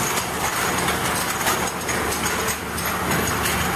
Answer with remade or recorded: recorded